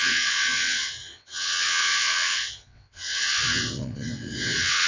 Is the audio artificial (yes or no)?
yes